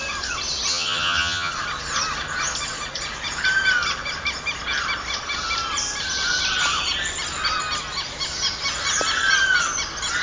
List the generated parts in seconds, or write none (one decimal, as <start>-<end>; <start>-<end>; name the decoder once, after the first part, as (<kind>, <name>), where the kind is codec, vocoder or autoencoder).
0.7-1.5 (vocoder, HiFi-GAN)